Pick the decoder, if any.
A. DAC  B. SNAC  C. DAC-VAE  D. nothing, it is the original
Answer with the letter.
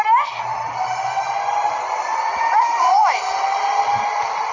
D